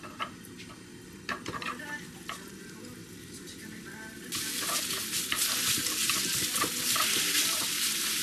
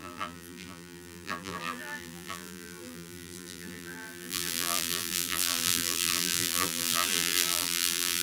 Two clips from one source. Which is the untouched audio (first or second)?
first